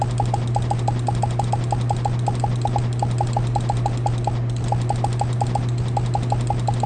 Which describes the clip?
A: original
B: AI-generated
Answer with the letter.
A